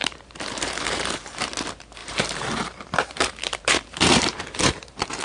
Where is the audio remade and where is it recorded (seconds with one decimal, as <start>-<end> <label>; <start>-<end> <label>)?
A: 0.0-1.4 remade; 1.4-2.0 recorded; 2.0-5.2 remade